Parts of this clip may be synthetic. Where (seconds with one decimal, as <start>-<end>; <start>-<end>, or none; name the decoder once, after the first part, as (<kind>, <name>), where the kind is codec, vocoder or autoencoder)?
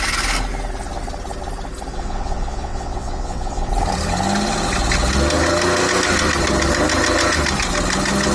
1.9-3.7 (vocoder, WaveNeXt)